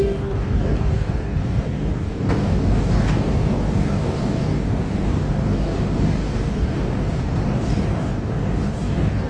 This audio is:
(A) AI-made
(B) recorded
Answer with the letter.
A